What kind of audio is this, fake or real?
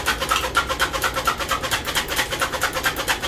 real